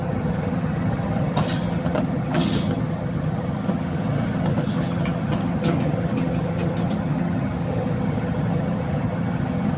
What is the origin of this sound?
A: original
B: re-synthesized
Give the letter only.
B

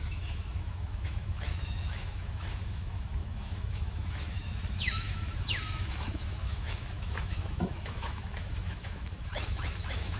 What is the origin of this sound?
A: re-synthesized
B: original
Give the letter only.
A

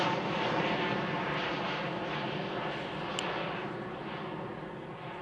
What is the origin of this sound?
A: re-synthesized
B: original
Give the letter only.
B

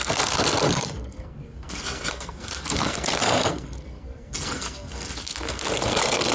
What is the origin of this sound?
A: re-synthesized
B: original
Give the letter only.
A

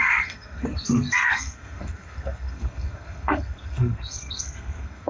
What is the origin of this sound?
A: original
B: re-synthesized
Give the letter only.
B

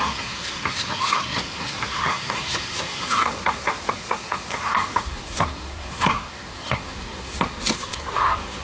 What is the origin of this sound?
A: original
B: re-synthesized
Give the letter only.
B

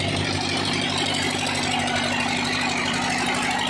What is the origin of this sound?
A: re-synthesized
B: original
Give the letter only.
A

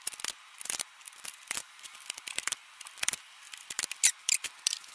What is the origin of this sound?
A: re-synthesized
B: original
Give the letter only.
A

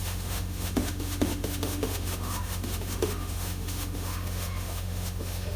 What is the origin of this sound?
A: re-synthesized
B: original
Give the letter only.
A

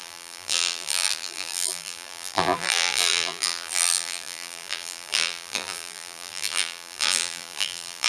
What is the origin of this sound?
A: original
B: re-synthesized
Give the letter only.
B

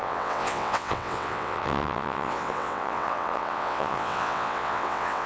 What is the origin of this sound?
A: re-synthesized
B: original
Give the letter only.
A